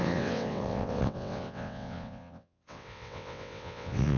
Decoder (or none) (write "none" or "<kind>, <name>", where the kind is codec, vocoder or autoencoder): vocoder, WaveNeXt